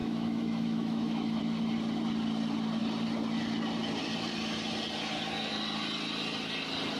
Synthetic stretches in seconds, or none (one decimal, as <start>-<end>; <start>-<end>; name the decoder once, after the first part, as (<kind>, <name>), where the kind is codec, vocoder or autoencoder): 0.0-1.4 (autoencoder, DAC-VAE)